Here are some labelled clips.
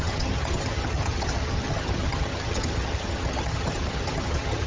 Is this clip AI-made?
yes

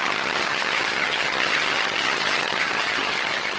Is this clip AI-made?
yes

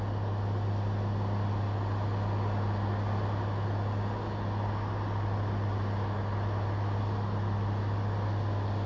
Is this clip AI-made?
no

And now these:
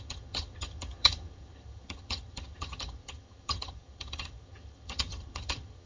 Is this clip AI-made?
yes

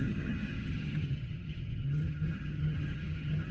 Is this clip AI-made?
yes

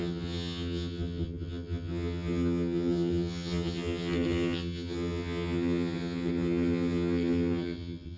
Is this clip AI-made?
yes